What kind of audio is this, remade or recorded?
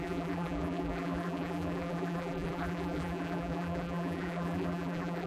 remade